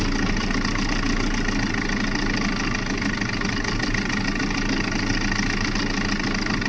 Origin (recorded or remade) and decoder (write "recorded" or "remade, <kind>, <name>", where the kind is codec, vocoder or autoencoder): recorded